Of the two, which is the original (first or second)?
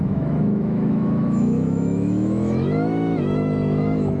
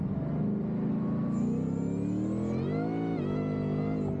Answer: second